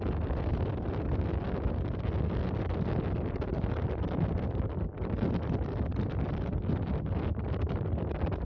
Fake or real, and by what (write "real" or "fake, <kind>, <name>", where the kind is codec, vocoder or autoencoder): real